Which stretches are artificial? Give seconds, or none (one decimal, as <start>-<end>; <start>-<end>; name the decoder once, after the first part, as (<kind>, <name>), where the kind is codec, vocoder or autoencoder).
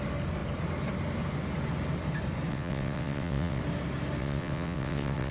2.5-3.6 (vocoder, WaveNeXt); 4.2-5.3